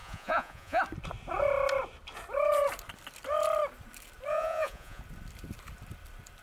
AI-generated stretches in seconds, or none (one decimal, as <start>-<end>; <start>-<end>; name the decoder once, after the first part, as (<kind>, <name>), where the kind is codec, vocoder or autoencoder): 0.0-0.8 (vocoder, Vocos); 4.3-5.0